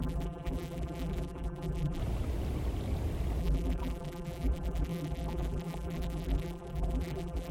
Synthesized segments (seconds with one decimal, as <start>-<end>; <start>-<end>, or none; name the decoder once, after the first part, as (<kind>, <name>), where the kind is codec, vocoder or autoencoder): 0.0-2.0 (vocoder, BigVGAN v2); 3.4-7.5